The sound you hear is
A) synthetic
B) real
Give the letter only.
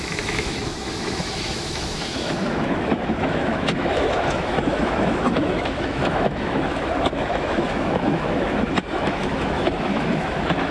A